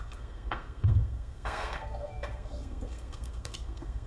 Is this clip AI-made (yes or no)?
yes